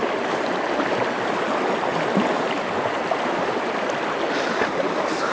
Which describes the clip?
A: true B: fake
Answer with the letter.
A